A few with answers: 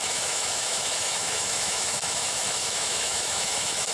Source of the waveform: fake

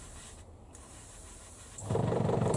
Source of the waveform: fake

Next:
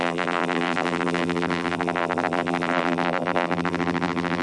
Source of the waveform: fake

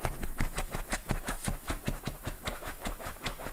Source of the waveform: fake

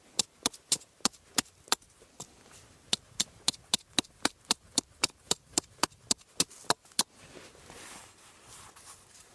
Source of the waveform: real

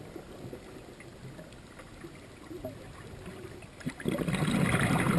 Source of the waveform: real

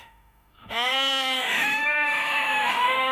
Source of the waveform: fake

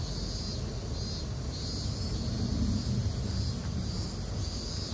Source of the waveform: real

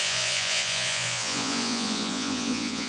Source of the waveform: fake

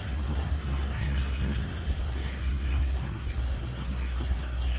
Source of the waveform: fake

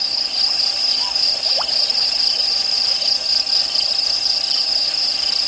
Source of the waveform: real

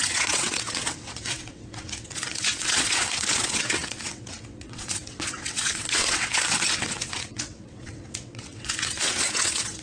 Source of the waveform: fake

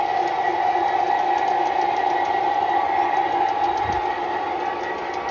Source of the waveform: real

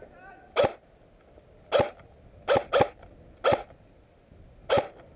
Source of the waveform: real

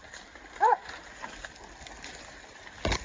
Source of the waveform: real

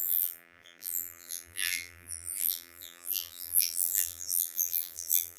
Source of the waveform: fake